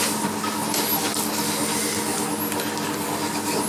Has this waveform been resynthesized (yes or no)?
no